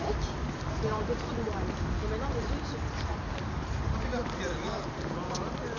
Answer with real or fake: real